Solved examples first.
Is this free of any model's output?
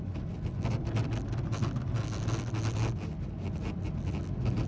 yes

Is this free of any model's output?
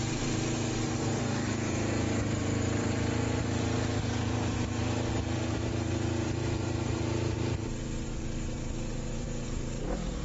no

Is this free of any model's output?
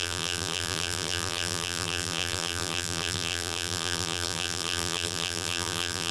no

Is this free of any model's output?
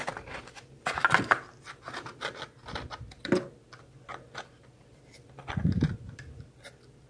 yes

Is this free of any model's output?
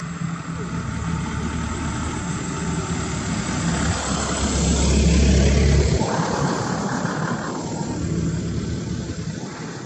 yes